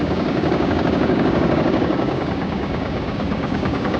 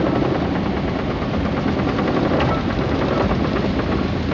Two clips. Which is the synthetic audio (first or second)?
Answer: first